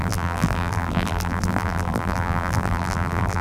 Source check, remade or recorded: remade